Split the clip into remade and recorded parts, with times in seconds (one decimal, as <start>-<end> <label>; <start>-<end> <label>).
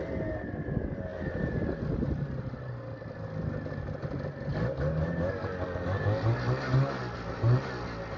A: 0.0-1.1 recorded; 1.1-2.7 remade; 2.7-8.2 recorded